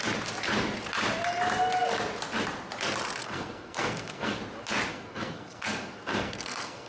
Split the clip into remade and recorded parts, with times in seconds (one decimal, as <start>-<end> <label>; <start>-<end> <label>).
0.0-3.2 recorded; 3.2-4.4 remade; 4.4-4.9 recorded; 4.9-6.9 remade